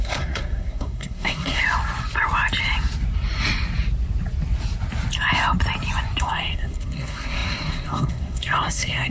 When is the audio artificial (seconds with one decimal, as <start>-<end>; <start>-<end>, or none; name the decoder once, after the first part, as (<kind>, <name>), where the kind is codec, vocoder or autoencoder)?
0.0-1.6 (codec, SNAC); 6.2-9.1